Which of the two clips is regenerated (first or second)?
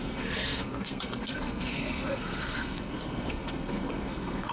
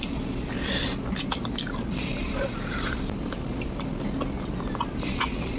first